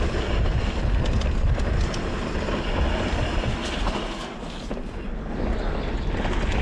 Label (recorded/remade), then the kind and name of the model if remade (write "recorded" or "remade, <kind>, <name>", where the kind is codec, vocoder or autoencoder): recorded